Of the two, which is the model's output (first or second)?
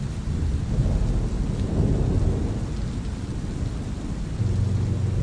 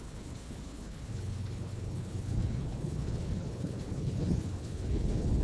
second